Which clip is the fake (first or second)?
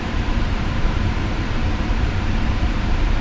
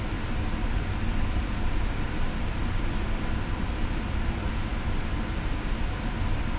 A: first